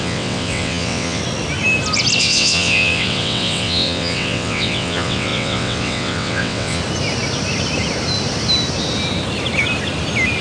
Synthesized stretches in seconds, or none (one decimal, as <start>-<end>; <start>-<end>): 0.0-1.2; 2.2-6.8